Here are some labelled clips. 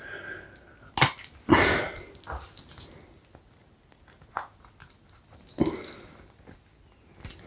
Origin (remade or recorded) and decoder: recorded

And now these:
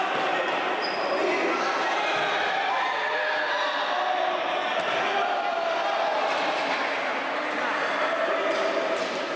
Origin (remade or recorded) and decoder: recorded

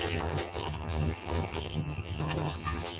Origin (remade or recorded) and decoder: remade, vocoder, HiFi-GAN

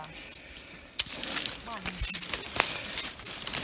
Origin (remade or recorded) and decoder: recorded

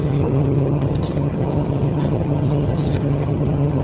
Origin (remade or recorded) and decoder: remade, vocoder, HiFi-GAN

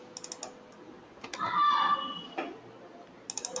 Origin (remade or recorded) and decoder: recorded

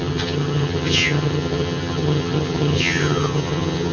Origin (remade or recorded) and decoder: remade, vocoder, HiFi-GAN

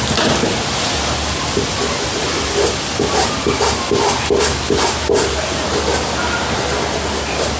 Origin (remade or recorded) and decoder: recorded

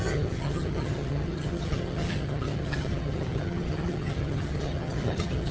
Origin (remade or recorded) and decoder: remade, vocoder, HiFi-GAN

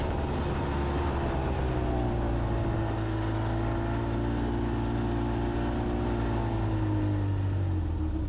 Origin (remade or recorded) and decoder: recorded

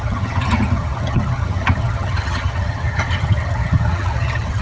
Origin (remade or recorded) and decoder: remade, vocoder, HiFi-GAN